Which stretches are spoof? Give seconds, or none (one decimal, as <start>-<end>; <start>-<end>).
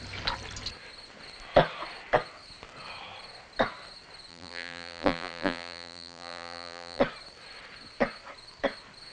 4.3-7.0